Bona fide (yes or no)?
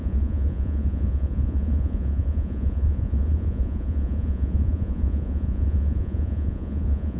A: no